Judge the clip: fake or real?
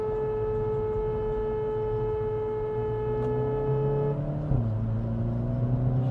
real